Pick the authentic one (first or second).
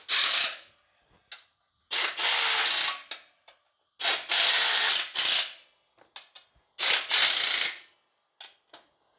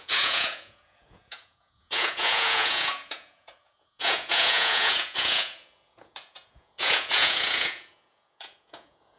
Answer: first